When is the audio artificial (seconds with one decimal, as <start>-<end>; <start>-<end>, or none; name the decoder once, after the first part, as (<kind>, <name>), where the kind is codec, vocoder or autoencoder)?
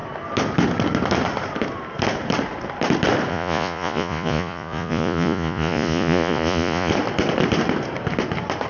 3.3-6.9 (vocoder, Vocos)